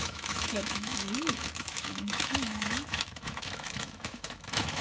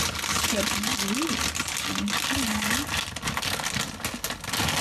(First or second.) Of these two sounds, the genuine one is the second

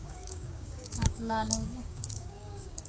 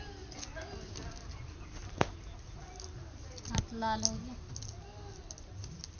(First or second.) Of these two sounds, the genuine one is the second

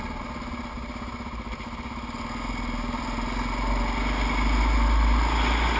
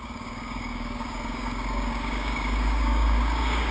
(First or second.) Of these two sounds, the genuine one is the first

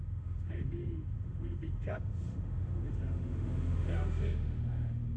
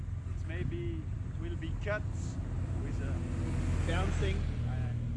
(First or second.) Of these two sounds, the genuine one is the second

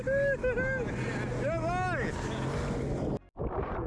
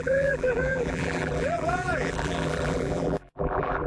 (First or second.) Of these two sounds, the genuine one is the first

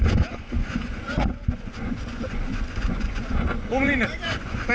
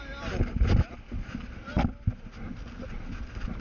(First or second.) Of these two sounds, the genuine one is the second